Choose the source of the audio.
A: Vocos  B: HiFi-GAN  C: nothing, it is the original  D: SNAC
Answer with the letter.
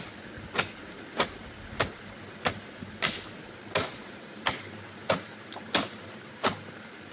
C